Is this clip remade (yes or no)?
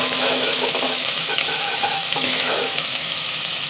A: yes